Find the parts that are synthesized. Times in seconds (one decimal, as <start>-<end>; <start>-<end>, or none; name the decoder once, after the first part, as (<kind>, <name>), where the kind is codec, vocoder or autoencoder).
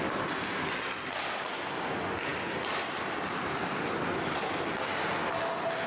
none